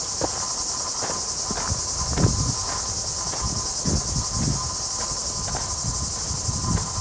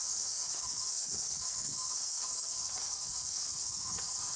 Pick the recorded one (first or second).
first